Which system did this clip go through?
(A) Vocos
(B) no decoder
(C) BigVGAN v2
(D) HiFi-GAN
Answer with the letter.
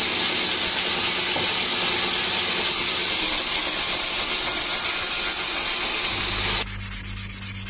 B